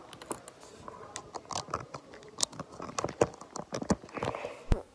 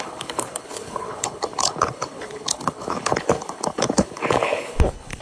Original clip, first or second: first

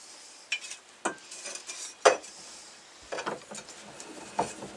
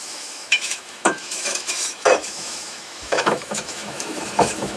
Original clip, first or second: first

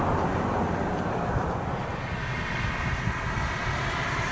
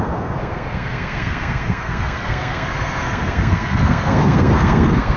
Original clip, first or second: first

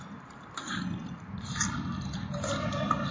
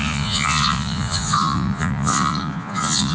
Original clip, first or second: first